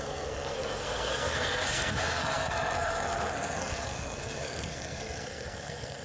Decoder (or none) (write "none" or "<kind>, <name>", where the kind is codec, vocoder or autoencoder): codec, SNAC